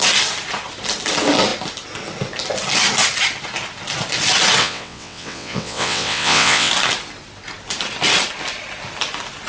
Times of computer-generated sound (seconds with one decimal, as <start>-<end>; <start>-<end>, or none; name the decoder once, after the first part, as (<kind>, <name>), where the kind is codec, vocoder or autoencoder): 4.6-6.7 (vocoder, WaveNeXt)